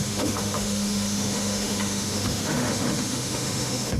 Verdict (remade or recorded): remade